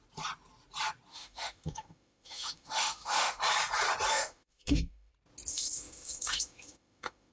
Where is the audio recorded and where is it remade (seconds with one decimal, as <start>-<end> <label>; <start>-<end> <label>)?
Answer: 0.0-1.1 recorded; 1.1-3.4 remade; 3.4-4.1 recorded; 4.1-5.1 remade; 5.1-5.5 recorded; 5.5-7.3 remade